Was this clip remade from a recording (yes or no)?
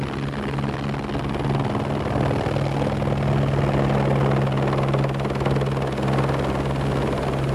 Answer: no